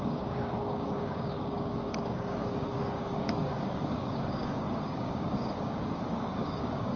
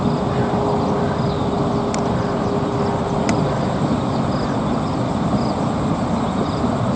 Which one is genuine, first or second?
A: second